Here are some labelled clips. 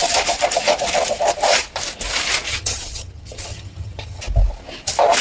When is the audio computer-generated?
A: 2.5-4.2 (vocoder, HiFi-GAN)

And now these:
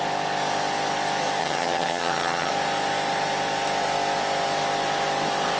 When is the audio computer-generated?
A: 1.4-2.5 (vocoder, HiFi-GAN)

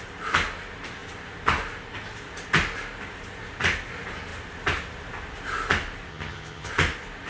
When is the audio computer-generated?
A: 6.1-6.7 (vocoder, HiFi-GAN)